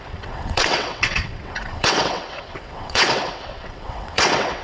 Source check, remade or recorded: remade